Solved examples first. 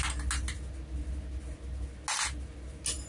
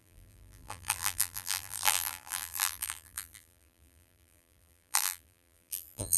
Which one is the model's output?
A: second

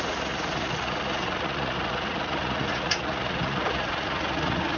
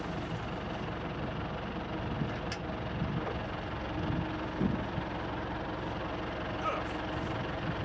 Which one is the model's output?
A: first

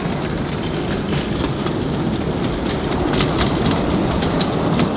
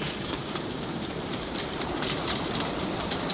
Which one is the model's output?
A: second